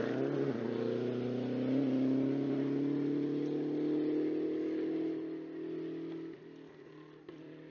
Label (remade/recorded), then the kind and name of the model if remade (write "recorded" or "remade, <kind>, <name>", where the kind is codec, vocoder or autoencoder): recorded